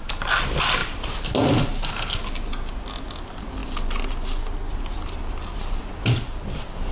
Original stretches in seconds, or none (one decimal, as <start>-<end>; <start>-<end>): 0.0-0.8; 1.9-6.9